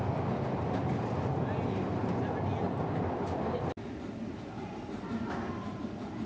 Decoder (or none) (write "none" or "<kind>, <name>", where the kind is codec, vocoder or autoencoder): none